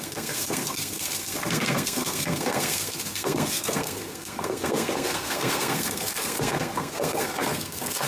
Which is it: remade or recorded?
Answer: remade